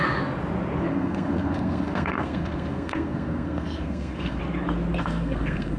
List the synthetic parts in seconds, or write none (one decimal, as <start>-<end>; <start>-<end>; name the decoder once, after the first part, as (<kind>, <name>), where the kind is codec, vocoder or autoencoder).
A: 0.9-4.4 (codec, SNAC); 5.0-5.8